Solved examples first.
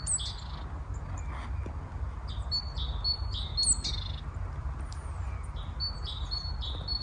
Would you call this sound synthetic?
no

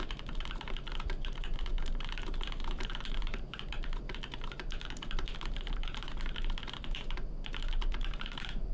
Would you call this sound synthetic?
yes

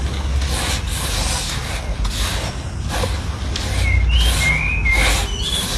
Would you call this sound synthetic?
no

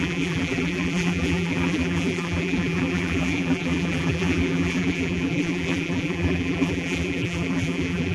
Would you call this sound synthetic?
yes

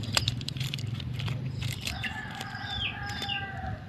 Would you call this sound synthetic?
yes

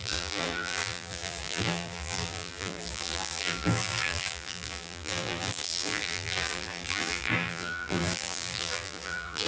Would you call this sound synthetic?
yes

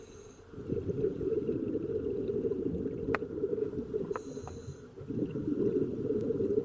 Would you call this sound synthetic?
no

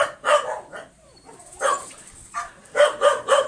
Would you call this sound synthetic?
yes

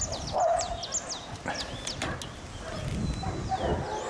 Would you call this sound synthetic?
no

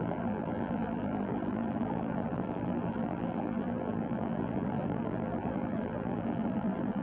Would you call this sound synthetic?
yes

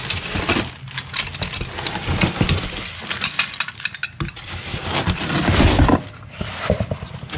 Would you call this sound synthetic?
no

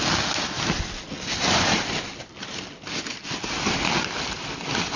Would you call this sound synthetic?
no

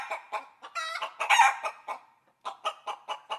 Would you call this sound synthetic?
no